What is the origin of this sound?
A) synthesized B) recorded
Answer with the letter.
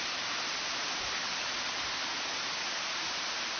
A